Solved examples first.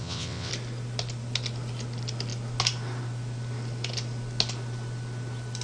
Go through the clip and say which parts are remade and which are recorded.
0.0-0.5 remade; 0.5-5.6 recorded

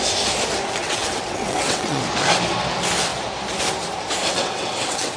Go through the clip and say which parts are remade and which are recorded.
0.0-0.8 recorded; 0.8-2.0 remade; 2.0-4.3 recorded; 4.3-5.2 remade

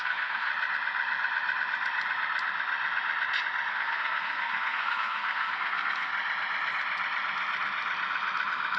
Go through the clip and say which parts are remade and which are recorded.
0.0-0.5 remade; 0.5-3.7 recorded; 3.7-6.1 remade; 6.1-8.8 recorded

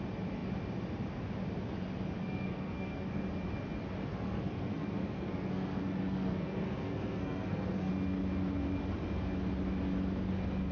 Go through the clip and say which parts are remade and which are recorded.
0.0-2.2 recorded; 2.2-3.2 remade; 3.2-4.0 recorded; 4.0-7.9 remade; 7.9-10.7 recorded

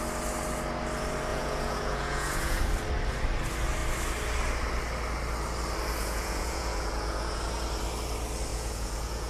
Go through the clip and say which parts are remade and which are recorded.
0.0-1.3 recorded; 1.3-2.6 remade; 2.6-6.0 recorded; 6.0-7.4 remade; 7.4-8.5 recorded; 8.5-9.3 remade